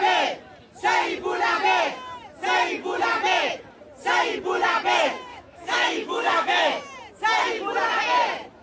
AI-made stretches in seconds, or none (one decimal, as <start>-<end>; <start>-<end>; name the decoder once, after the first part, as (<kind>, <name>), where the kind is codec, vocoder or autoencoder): 5.3-6.8 (autoencoder, DAC-VAE)